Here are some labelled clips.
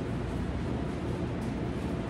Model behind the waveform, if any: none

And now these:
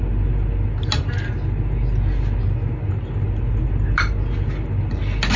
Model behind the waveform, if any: none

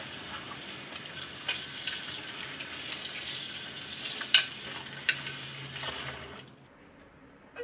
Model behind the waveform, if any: none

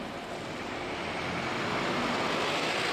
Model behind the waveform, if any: none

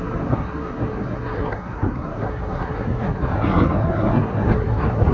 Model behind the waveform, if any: codec, SNAC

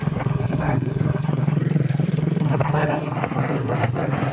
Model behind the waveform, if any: codec, SNAC